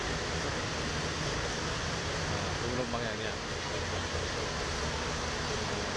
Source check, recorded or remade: recorded